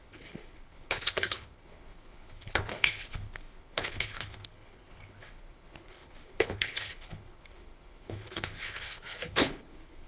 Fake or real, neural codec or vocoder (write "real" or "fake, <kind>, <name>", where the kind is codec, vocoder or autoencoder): fake, codec, HILCodec